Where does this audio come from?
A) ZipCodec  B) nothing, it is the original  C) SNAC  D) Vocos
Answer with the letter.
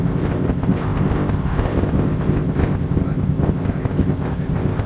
A